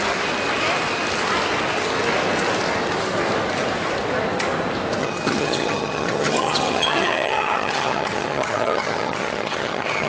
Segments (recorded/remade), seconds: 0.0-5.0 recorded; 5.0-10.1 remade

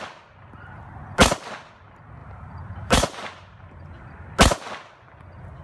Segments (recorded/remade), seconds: 0.0-2.2 recorded; 2.2-4.1 remade; 4.1-5.6 recorded